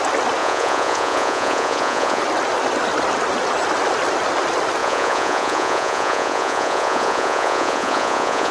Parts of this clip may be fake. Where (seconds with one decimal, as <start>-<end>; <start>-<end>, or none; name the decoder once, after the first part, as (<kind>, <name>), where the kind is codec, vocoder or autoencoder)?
0.4-2.2 (vocoder, Vocos); 4.8-8.5